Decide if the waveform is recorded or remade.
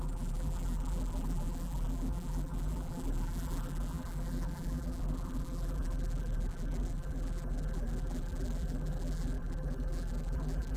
remade